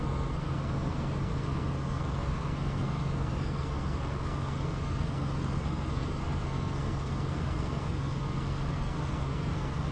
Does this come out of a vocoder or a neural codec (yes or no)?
yes